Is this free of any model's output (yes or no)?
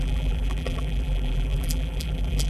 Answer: no